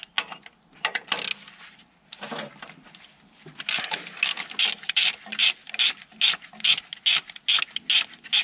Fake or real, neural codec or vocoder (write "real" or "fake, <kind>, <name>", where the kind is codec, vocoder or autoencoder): real